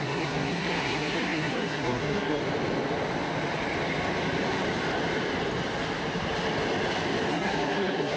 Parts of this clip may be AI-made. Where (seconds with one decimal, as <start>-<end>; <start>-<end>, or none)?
0.0-2.4; 7.3-8.2